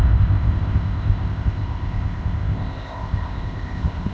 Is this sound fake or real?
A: fake